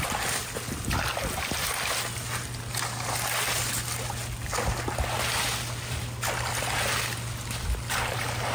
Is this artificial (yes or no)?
no